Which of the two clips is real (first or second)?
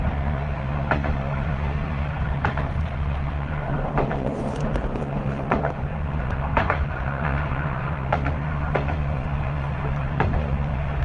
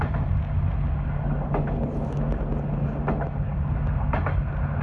second